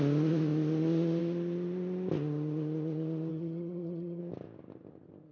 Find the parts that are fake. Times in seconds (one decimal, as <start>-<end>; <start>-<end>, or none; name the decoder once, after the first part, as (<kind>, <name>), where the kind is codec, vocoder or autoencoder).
3.3-4.2 (vocoder, HiFi-GAN)